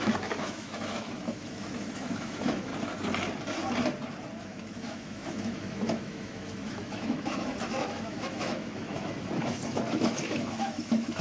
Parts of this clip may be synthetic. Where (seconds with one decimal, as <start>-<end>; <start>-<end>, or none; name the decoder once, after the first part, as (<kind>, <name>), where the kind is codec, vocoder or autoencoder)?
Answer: 0.0-2.7 (autoencoder, DAC-VAE); 4.4-11.2